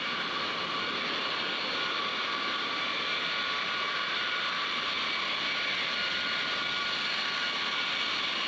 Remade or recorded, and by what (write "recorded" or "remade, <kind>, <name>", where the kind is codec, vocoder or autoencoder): recorded